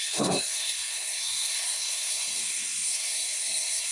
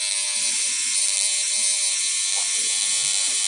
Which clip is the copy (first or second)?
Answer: first